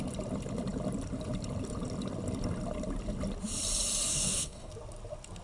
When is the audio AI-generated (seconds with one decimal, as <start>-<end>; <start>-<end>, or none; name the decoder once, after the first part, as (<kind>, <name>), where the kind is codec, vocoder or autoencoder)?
4.1-4.7 (codec, DAC)